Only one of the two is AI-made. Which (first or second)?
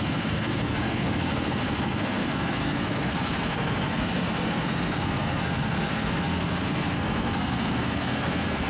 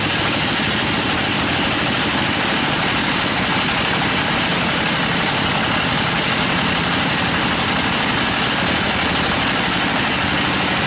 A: first